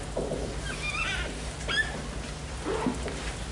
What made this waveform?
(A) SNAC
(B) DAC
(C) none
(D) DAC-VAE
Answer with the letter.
C